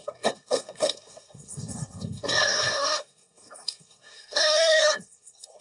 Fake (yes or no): yes